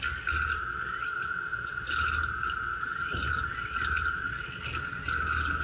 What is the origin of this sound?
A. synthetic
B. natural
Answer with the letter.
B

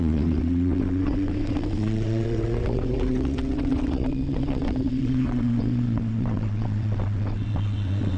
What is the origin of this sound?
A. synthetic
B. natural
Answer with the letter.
A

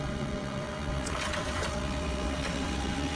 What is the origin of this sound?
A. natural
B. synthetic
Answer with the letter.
B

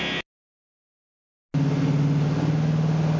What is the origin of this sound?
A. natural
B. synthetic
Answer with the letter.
A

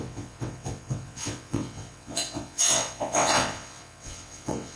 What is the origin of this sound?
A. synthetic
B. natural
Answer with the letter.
A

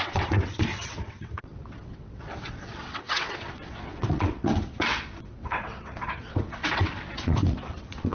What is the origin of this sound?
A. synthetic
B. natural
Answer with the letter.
A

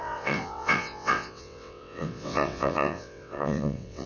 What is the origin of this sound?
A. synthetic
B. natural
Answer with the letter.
A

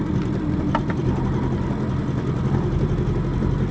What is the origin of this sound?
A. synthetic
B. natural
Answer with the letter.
B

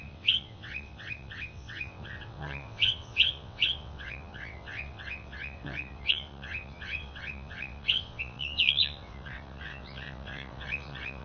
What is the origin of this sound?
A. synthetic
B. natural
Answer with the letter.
A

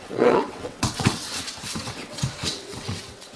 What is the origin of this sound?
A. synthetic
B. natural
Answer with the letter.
A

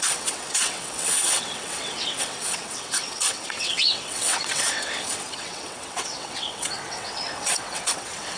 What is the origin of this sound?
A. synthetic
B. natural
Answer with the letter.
A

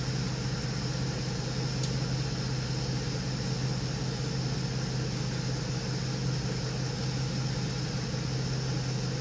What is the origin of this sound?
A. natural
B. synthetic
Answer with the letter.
A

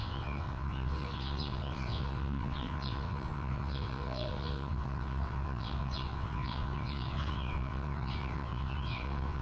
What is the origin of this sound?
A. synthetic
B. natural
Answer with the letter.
A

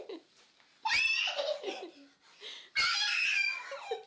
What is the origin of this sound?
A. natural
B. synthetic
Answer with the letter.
A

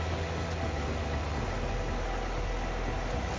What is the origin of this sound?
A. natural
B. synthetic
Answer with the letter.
A